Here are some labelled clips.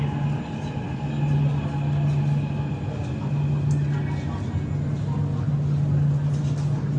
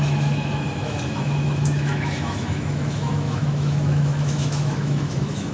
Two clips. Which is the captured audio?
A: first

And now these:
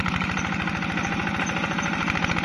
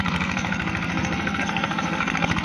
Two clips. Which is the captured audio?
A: first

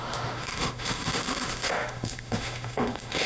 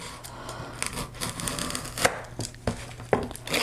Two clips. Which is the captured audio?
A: second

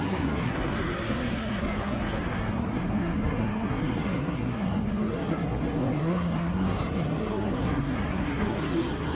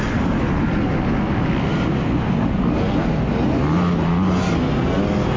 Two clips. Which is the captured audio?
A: second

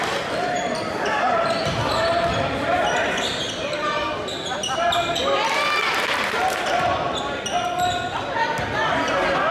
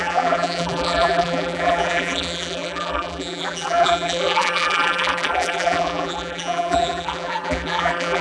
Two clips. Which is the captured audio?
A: first